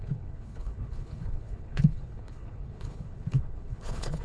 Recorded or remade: remade